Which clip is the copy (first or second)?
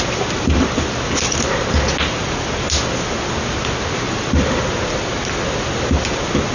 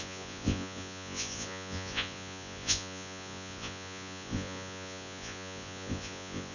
second